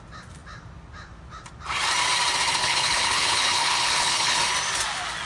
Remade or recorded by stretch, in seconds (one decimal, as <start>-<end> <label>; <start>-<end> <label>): 0.0-2.6 recorded; 2.6-4.4 remade; 4.4-5.3 recorded